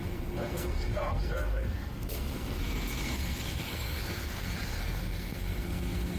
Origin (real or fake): fake